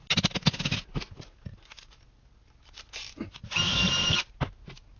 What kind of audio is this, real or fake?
real